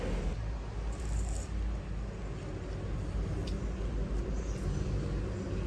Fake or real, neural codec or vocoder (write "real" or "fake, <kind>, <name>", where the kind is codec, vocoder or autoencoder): real